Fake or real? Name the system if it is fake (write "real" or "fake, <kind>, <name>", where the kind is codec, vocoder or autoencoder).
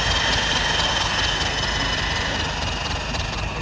real